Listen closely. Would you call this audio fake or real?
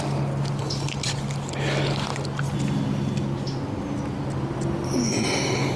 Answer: real